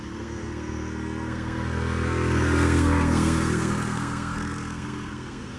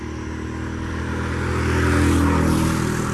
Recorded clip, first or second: second